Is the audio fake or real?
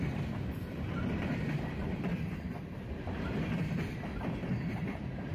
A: fake